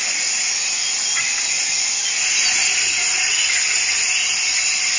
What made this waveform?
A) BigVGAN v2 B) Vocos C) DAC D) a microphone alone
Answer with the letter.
D